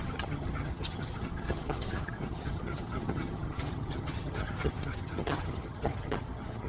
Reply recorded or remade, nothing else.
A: remade